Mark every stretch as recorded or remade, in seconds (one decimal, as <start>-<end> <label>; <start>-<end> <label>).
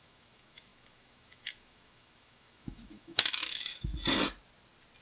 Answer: 0.0-3.9 remade; 3.9-5.0 recorded